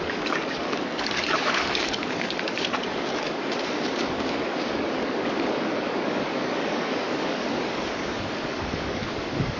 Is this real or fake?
fake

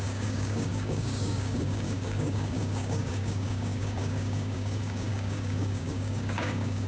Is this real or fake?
fake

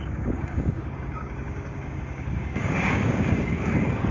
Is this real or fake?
fake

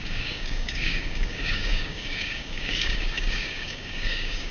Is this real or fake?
fake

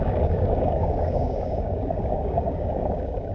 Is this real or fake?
fake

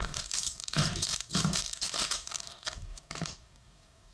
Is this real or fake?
fake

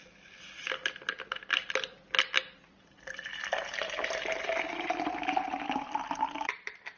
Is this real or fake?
real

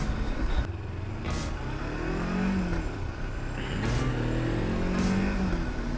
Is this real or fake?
real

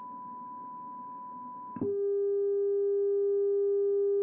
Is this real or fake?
real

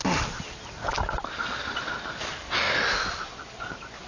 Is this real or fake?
real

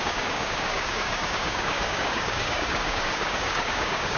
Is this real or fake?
fake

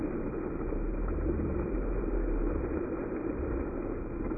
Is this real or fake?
real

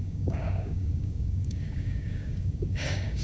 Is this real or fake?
fake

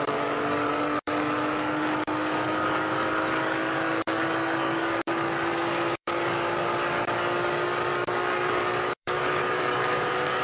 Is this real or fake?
fake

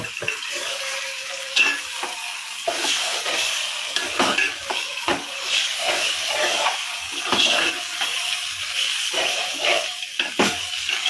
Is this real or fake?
fake